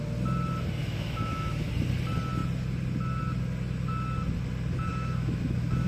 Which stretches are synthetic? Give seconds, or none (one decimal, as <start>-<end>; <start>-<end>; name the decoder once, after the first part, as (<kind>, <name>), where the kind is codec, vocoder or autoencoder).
0.8-1.7 (autoencoder, DAC-VAE); 4.9-5.9